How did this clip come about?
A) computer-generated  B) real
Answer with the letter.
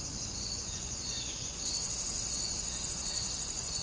A